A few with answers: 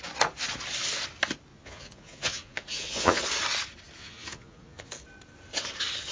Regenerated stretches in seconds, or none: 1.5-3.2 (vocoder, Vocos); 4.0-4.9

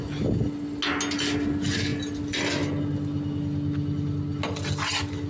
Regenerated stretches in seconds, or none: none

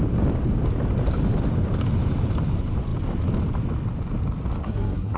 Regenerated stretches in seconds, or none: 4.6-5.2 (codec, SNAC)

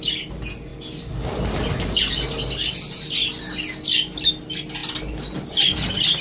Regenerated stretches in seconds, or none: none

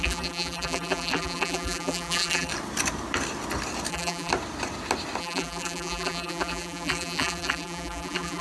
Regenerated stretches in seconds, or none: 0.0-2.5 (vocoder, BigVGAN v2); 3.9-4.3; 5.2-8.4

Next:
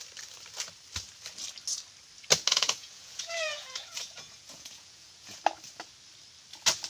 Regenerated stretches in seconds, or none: 2.5-5.4 (vocoder, Vocos)